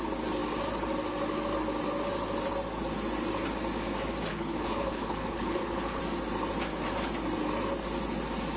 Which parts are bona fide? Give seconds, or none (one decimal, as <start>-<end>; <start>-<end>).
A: 0.0-4.3; 6.0-8.6